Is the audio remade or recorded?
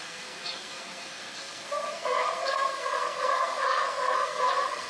remade